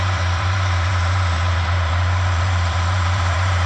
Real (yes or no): no